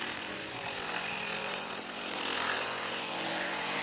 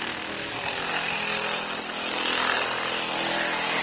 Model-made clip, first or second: first